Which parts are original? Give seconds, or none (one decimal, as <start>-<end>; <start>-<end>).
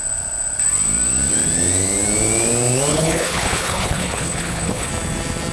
0.0-2.9; 4.9-5.5